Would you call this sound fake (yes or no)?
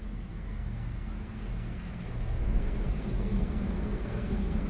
yes